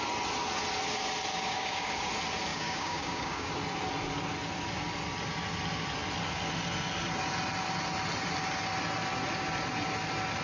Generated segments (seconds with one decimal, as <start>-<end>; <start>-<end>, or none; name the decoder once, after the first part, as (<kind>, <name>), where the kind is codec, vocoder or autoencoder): 1.3-2.1 (codec, DAC); 2.5-3.5